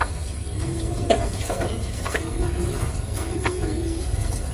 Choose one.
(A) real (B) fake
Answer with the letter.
B